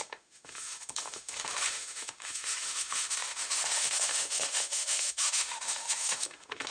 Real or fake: fake